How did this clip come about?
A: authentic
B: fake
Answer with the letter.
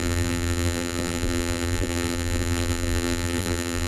B